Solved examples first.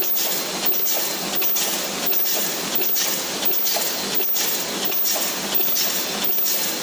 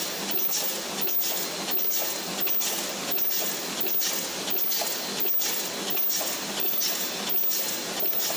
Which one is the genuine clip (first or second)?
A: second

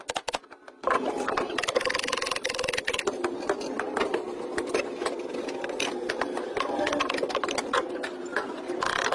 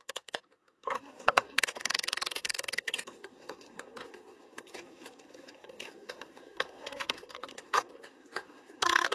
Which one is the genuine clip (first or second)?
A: first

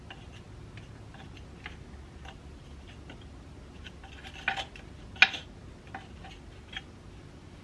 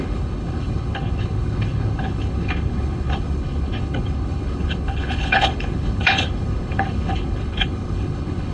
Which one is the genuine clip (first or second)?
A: first